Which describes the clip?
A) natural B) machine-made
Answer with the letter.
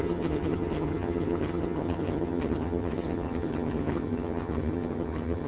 B